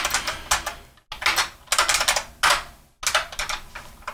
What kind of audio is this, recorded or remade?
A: recorded